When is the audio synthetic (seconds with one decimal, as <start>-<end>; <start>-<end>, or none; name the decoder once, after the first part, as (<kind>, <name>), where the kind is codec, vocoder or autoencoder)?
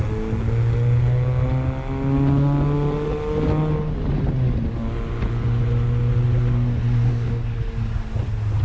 7.1-7.6 (codec, DAC)